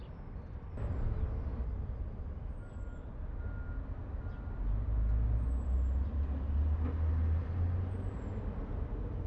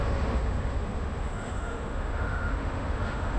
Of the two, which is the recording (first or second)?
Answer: first